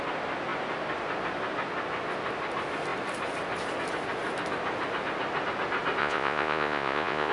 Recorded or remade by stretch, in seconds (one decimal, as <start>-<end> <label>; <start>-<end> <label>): 0.0-6.0 recorded; 6.0-7.3 remade